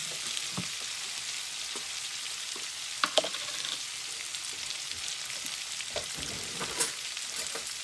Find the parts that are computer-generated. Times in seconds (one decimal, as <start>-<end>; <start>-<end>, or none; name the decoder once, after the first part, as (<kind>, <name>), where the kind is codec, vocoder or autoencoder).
1.6-4.3 (vocoder, BigVGAN v2); 5.1-7.8